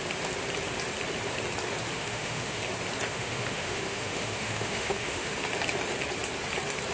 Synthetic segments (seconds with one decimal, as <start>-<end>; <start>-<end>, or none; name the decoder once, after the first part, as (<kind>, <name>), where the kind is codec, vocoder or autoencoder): 1.9-2.6 (autoencoder, DAC-VAE); 3.1-5.4